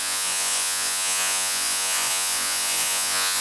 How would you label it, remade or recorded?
remade